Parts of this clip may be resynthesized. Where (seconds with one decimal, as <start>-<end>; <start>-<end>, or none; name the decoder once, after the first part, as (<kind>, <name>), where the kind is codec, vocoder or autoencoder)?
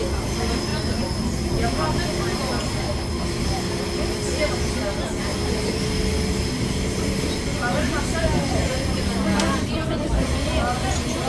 5.3-5.8 (vocoder, BigVGAN v2)